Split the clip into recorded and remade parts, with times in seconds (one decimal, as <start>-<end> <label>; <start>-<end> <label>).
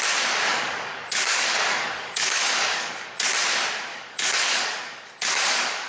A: 0.0-0.5 recorded; 0.5-3.2 remade; 3.2-3.9 recorded; 3.9-5.9 remade